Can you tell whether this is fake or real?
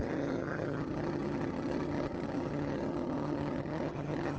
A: fake